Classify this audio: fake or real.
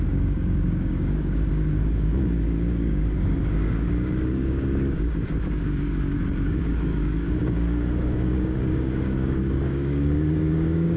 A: fake